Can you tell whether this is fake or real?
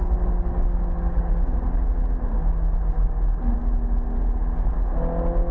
real